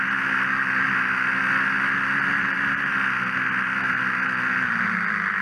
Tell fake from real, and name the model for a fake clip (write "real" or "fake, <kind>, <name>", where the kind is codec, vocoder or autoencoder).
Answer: real